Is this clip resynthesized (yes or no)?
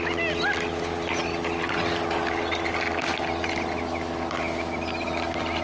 no